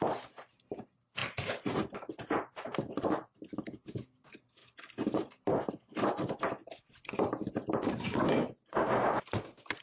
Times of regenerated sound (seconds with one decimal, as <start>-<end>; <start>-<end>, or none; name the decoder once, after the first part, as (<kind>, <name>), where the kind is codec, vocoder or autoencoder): none